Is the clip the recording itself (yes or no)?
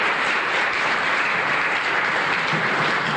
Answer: no